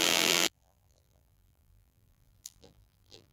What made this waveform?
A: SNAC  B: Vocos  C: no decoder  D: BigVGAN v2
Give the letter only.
D